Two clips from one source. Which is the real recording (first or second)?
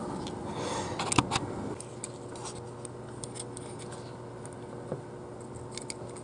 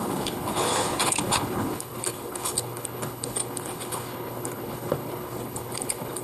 first